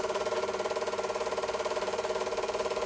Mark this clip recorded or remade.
remade